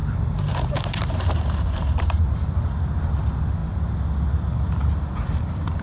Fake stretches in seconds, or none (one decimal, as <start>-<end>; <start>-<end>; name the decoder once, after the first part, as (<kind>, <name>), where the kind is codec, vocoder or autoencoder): 0.0-2.2 (vocoder, BigVGAN v2)